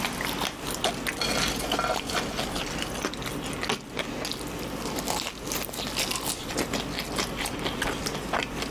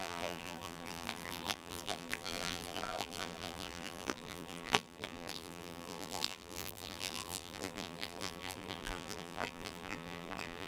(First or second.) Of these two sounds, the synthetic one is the second